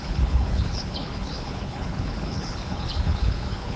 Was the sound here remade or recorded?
remade